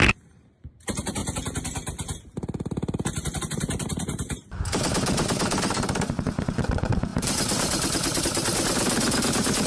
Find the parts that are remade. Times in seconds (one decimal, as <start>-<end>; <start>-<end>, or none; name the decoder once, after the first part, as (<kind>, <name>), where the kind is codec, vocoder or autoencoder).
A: 0.0-1.2 (vocoder, BigVGAN v2); 3.4-9.7